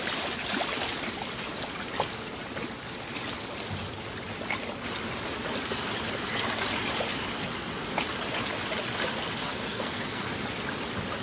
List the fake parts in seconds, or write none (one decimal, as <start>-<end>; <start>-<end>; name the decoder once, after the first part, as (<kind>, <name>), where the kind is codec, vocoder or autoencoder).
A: 9.4-10.3 (codec, SNAC)